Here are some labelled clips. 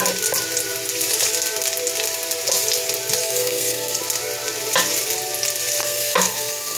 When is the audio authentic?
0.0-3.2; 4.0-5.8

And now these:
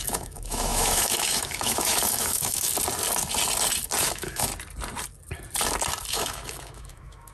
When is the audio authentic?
2.7-4.0; 4.5-6.1

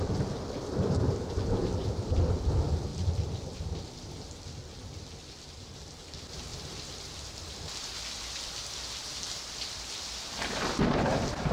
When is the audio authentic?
0.0-11.5